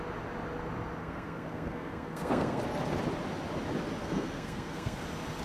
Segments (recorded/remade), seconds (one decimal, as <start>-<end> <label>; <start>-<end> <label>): 0.0-1.0 recorded; 1.0-2.6 remade; 2.6-4.0 recorded; 4.0-5.0 remade; 5.0-5.4 recorded